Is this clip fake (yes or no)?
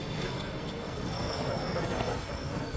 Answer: yes